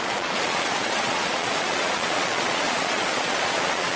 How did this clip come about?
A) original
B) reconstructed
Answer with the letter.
B